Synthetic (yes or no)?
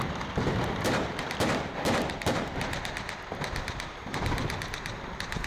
yes